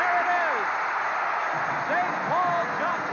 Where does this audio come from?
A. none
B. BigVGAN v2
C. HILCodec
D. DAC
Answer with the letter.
A